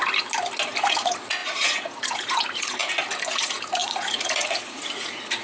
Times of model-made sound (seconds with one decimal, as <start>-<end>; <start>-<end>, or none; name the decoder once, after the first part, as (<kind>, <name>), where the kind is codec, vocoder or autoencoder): 0.8-2.8 (vocoder, Vocos); 3.3-5.4